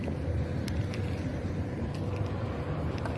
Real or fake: fake